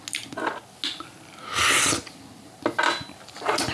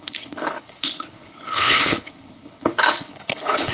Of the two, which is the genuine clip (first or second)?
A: first